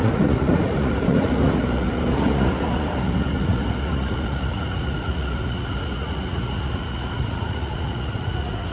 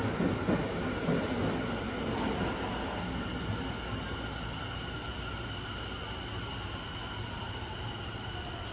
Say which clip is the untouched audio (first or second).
second